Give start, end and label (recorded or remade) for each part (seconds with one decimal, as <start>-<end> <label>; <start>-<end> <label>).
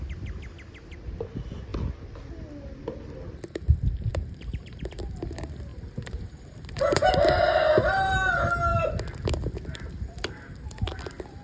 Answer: 0.0-4.1 recorded; 4.1-4.9 remade; 4.9-5.7 recorded; 5.7-7.1 remade; 7.1-11.4 recorded